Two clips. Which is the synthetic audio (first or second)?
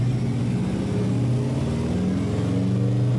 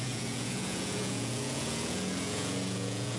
second